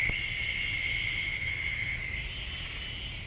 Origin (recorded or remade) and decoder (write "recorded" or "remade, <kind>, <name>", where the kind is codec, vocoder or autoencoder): recorded